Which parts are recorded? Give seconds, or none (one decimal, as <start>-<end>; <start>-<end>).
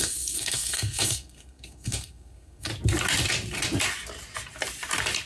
2.7-5.3